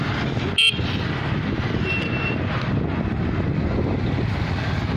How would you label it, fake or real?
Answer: real